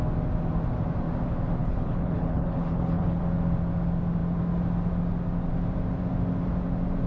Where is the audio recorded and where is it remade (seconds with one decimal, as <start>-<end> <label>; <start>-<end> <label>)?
0.0-1.6 recorded; 1.6-3.2 remade; 3.2-7.1 recorded